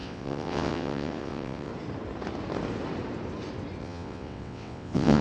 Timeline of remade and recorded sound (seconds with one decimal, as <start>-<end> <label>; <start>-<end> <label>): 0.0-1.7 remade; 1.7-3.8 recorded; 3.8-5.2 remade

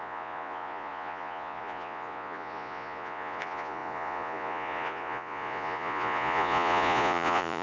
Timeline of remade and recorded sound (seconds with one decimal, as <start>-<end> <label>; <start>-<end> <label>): 0.0-7.6 remade

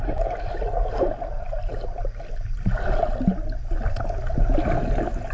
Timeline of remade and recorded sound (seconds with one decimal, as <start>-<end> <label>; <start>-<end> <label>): 0.0-5.3 recorded

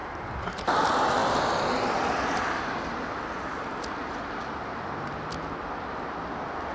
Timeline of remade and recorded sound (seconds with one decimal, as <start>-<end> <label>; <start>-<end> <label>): 0.0-0.7 remade; 0.7-6.7 recorded

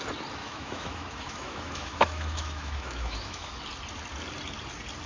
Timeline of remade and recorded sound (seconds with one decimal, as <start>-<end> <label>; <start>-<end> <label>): 0.0-0.4 recorded; 0.4-3.5 remade; 3.5-5.1 recorded